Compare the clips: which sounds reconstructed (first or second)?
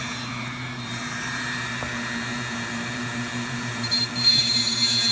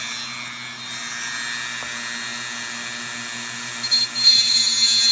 first